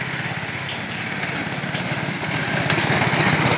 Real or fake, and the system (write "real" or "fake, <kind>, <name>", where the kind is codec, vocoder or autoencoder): real